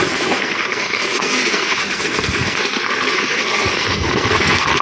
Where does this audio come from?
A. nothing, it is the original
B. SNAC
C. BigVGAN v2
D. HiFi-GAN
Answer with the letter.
B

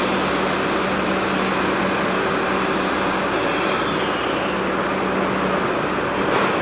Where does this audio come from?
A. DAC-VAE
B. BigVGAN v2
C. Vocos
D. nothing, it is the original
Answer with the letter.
D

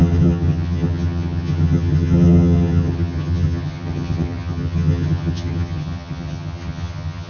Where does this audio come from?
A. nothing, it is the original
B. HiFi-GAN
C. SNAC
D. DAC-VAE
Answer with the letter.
B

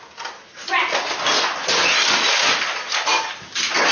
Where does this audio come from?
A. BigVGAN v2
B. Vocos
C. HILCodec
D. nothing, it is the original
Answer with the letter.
D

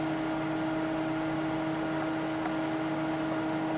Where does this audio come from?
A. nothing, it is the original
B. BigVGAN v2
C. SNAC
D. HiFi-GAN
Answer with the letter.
A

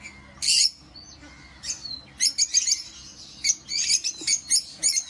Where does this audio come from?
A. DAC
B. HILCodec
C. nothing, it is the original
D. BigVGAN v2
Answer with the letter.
C